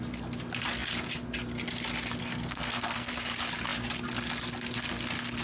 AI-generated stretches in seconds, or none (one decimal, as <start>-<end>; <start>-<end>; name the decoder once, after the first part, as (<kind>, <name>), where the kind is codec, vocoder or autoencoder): 2.2-3.1 (codec, SNAC)